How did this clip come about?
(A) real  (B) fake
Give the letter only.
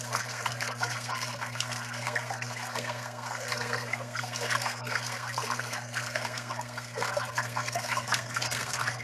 B